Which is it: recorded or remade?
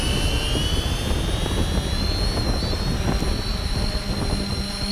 recorded